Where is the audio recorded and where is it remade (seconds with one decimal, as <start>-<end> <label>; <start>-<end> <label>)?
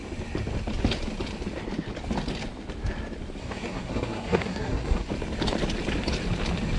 0.0-3.4 recorded; 3.4-5.1 remade; 5.1-6.8 recorded